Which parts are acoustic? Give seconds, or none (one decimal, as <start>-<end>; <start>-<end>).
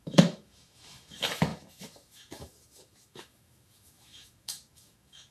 none